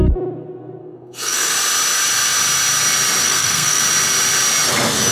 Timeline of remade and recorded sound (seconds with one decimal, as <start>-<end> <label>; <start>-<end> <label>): 0.0-0.8 recorded; 0.8-1.5 remade; 1.5-3.2 recorded; 3.2-3.8 remade; 3.8-5.1 recorded